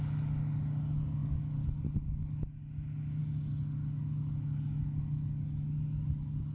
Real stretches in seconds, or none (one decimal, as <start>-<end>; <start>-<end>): 0.0-6.5